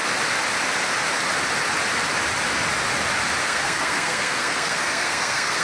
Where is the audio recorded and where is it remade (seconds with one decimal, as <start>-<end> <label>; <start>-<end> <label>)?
0.0-3.4 recorded; 3.4-5.6 remade